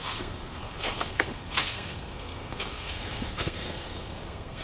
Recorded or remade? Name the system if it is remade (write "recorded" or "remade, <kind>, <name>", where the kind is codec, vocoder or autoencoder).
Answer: remade, codec, SNAC